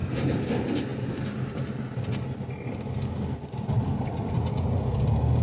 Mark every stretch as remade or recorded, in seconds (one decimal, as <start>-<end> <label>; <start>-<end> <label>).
0.0-0.5 remade; 0.5-5.4 recorded